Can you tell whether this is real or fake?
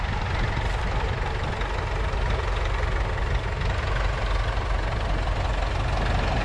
real